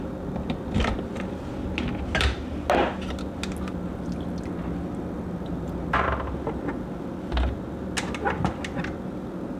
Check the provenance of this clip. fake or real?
real